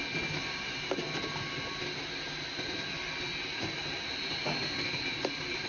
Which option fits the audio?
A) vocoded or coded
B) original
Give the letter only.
B